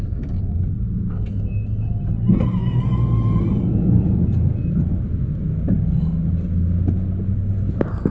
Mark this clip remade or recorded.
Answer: recorded